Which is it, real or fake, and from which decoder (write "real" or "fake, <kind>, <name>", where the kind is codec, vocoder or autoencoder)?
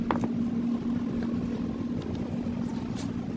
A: real